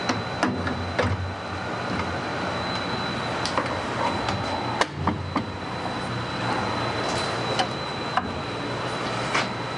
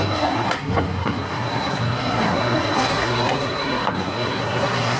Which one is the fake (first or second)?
second